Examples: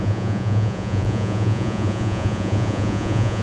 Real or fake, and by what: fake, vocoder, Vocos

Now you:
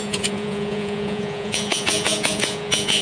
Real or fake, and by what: fake, vocoder, Vocos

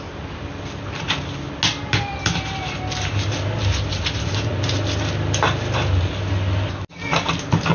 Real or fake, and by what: real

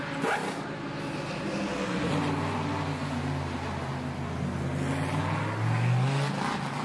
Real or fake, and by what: real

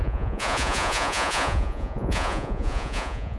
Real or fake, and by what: fake, vocoder, Vocos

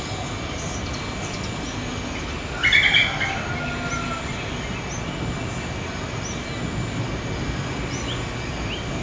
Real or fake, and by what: real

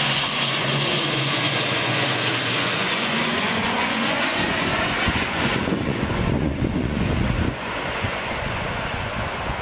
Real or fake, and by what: fake, vocoder, Vocos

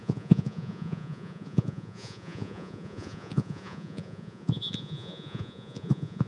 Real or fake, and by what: fake, vocoder, Vocos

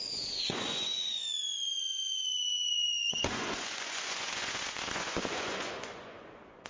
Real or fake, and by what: fake, vocoder, Vocos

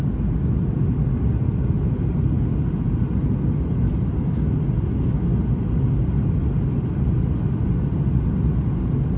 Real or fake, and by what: real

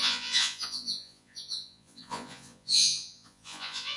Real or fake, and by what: fake, vocoder, Vocos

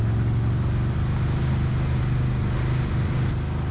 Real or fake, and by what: real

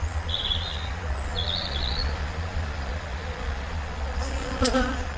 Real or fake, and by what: fake, vocoder, Vocos